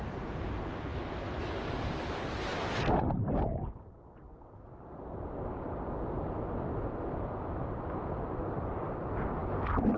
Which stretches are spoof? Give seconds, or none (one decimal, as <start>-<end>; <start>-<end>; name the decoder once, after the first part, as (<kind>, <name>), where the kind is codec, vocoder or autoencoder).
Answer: 0.9-1.5 (autoencoder, DAC-VAE)